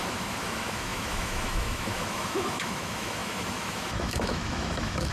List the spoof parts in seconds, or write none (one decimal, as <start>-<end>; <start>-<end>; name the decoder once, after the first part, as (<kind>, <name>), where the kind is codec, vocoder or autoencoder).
0.0-5.1 (autoencoder, DAC-VAE)